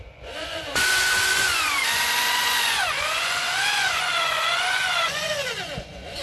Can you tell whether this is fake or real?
fake